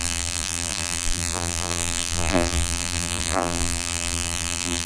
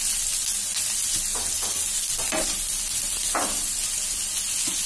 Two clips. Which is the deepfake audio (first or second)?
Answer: first